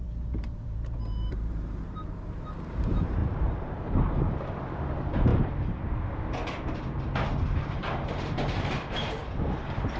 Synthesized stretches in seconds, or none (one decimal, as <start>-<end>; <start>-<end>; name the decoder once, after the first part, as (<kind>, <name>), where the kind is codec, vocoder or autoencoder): 0.0-5.3 (vocoder, BigVGAN v2); 7.5-10.0